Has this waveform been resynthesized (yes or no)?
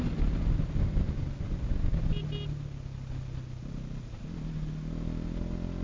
no